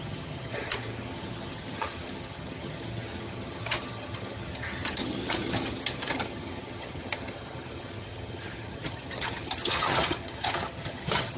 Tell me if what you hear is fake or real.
fake